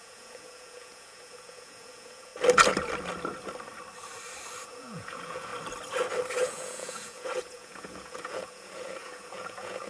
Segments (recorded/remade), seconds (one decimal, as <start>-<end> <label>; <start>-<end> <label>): 0.0-2.3 remade; 2.3-4.6 recorded; 4.6-5.5 remade; 5.5-6.3 recorded; 6.3-9.9 remade